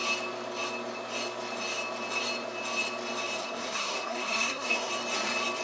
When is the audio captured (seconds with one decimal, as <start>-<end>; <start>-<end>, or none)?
0.0-3.4; 4.9-5.6